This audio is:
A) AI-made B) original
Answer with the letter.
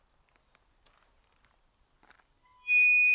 B